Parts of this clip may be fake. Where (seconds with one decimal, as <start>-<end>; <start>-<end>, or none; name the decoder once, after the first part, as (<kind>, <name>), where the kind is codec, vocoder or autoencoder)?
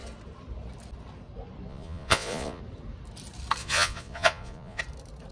1.7-2.6 (vocoder, Vocos); 3.6-4.8